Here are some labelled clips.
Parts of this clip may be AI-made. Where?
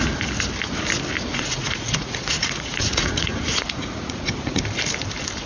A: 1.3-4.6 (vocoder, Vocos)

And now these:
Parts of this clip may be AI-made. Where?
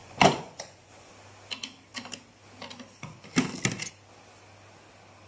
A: 0.0-1.1 (vocoder, Vocos)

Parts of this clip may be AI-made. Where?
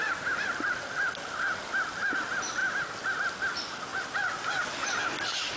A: none